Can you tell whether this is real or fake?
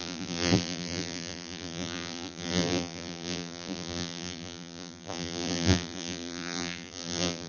fake